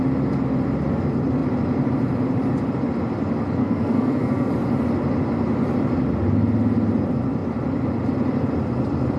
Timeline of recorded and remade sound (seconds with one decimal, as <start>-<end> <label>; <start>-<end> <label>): 0.0-3.6 recorded; 3.6-4.5 remade; 4.5-9.2 recorded